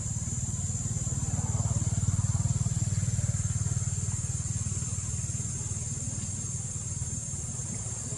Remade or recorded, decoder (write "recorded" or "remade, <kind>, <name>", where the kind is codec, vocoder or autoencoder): recorded